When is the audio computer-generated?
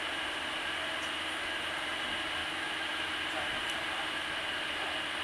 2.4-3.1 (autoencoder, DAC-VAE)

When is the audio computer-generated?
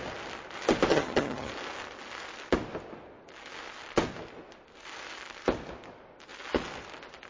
0.9-1.5 (vocoder, HiFi-GAN)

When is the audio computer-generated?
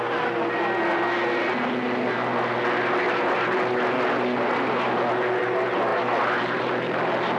5.9-6.6 (vocoder, BigVGAN v2)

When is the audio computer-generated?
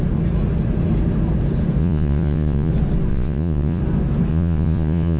1.8-2.7 (vocoder, Vocos); 3.1-3.8; 4.3-5.2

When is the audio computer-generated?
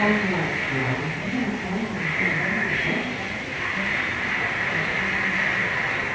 0.8-4.5 (vocoder, BigVGAN v2)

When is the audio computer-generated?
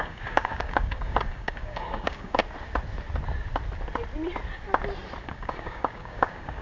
0.0-2.4 (codec, DAC); 5.2-6.6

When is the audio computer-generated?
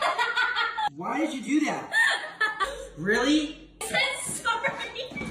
0.0-0.6 (vocoder, BigVGAN v2); 1.1-1.7